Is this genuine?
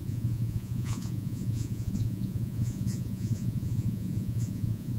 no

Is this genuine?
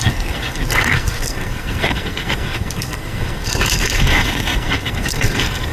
no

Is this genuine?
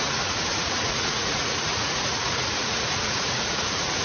no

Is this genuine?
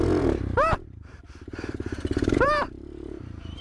no